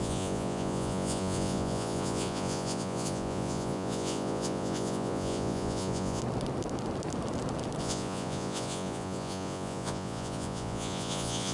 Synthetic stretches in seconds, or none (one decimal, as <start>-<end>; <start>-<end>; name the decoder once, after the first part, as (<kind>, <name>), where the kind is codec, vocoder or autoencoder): 0.0-6.2 (vocoder, Vocos); 7.8-11.5